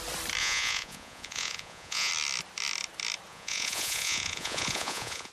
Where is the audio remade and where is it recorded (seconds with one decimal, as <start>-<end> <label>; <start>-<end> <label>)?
0.0-0.4 recorded; 0.4-2.1 remade; 2.1-3.3 recorded; 3.3-5.3 remade